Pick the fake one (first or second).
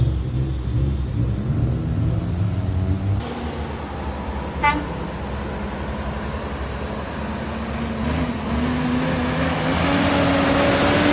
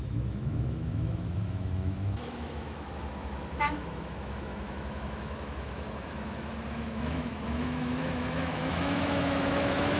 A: second